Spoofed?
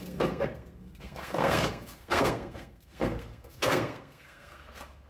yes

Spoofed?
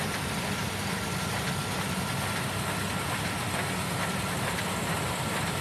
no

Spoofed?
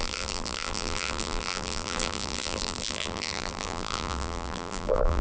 yes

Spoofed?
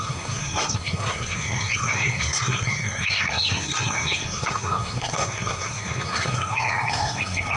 yes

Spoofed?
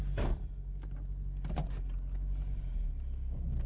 no